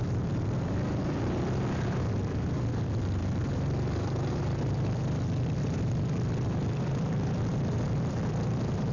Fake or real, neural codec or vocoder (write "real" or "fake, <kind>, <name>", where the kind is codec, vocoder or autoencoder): fake, vocoder, BigVGAN v2